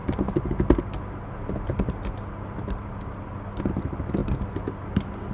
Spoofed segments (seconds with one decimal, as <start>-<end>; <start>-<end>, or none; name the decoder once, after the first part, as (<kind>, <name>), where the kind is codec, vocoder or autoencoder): none

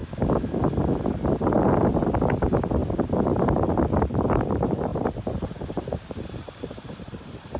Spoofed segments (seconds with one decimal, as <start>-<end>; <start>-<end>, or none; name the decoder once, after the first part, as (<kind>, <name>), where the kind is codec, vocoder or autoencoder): 2.3-2.8 (vocoder, BigVGAN v2); 3.3-4.9; 5.7-7.6